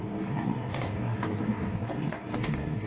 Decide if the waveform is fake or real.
fake